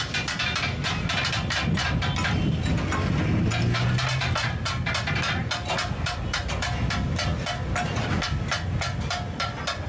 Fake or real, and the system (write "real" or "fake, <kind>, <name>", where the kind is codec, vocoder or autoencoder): real